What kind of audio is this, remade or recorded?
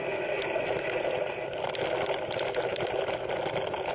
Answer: recorded